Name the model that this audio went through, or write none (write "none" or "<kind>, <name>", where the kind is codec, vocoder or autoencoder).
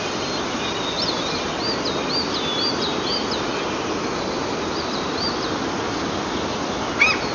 none